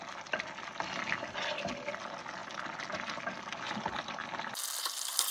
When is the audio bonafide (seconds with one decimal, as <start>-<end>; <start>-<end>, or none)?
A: 0.0-5.3